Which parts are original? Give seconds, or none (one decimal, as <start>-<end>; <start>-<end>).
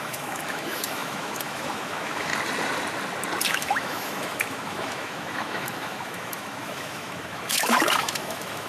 2.3-3.5